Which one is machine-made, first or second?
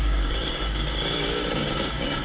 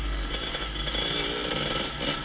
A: first